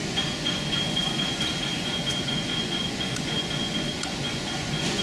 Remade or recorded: remade